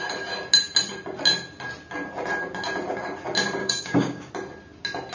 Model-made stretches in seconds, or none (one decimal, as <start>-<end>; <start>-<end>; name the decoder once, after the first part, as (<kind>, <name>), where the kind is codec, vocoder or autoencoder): 3.6-4.3 (codec, DAC)